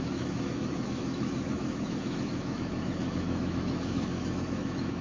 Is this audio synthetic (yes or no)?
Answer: yes